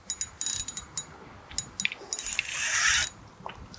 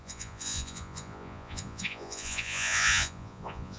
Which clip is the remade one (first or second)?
second